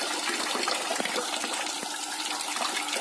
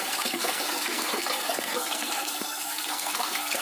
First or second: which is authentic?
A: first